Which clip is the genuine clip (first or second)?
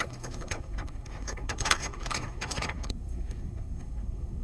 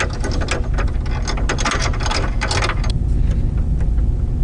second